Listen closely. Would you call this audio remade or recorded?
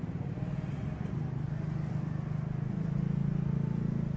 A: recorded